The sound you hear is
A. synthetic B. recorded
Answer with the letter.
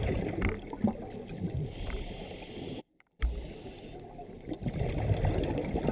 B